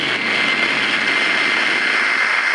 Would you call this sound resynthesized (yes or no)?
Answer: no